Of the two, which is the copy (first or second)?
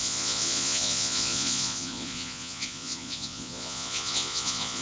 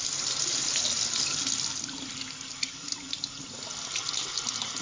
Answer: first